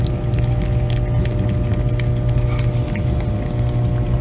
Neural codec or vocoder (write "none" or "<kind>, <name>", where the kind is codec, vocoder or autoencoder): none